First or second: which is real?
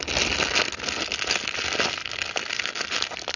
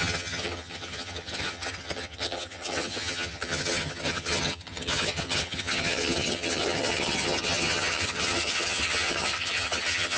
first